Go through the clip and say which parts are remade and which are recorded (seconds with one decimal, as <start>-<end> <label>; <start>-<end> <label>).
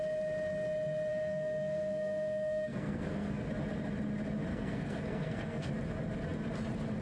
0.0-1.1 recorded; 1.1-3.5 remade; 3.5-4.5 recorded; 4.5-5.7 remade; 5.7-7.0 recorded